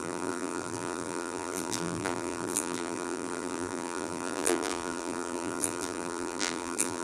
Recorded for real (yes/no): no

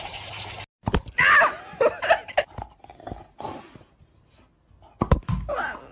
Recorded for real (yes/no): yes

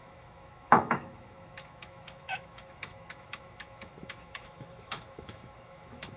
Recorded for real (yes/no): no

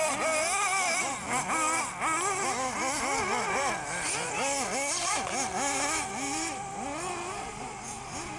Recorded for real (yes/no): yes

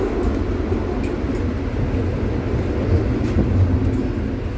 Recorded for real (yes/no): yes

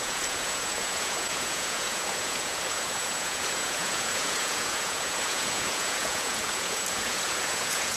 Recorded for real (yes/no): no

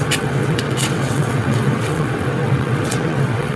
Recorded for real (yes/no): no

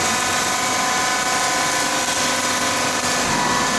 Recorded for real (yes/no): yes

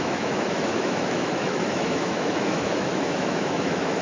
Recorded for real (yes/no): no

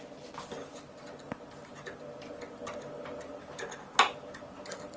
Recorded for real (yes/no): yes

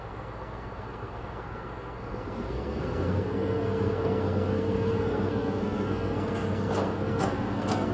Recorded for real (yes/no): no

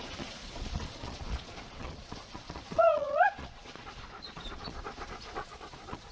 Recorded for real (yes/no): no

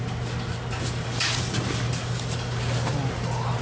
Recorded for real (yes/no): yes